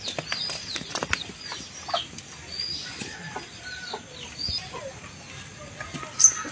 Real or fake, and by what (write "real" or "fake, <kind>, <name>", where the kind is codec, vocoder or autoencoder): real